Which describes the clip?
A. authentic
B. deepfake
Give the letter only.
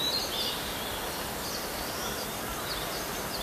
A